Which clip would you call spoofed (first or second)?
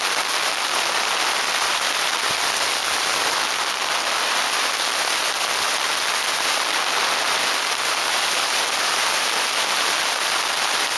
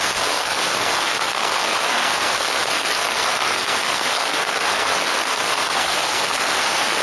second